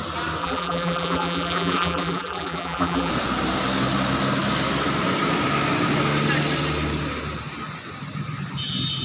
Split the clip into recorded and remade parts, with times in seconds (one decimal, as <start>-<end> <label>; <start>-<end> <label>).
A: 0.0-0.4 recorded; 0.4-3.1 remade; 3.1-9.0 recorded

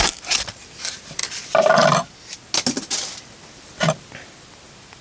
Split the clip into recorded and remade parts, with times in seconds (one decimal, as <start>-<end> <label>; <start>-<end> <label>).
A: 0.0-5.0 recorded

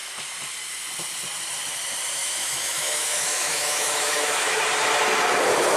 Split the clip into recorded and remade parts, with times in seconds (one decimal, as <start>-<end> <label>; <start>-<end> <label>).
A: 0.0-2.2 recorded; 2.2-4.6 remade; 4.6-5.8 recorded

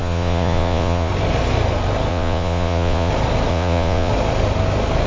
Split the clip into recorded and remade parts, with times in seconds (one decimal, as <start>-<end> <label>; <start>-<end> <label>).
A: 0.0-1.1 remade; 1.1-2.1 recorded; 2.1-3.1 remade; 3.1-3.5 recorded; 3.5-4.1 remade; 4.1-5.1 recorded

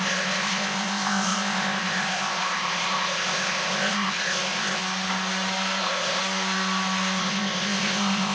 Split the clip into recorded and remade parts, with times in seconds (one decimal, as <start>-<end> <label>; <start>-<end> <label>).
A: 0.0-4.8 remade; 4.8-5.8 recorded; 5.8-6.2 remade; 6.2-7.2 recorded; 7.2-8.3 remade

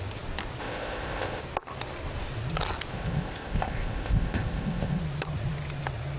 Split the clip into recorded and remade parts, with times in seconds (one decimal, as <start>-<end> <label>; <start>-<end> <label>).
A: 0.0-0.6 recorded; 0.6-1.4 remade; 1.4-2.9 recorded; 2.9-5.0 remade; 5.0-6.2 recorded